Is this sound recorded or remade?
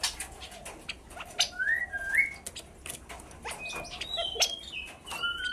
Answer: recorded